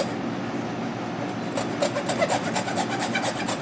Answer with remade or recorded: recorded